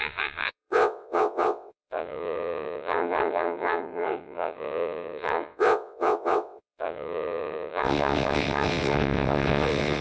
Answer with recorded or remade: remade